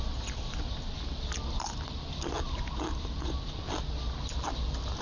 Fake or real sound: real